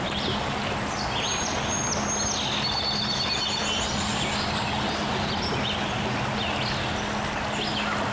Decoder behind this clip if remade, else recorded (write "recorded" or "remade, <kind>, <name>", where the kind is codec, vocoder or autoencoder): recorded